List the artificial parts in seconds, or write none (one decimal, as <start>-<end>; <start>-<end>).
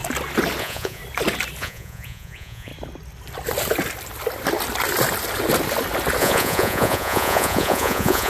0.6-1.0; 1.6-2.7; 6.2-8.3